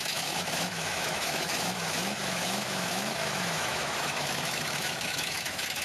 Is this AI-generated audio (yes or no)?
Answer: yes